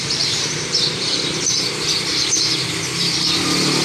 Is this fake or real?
fake